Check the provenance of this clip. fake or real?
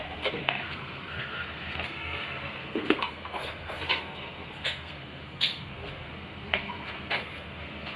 fake